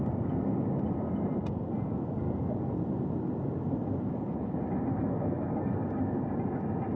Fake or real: real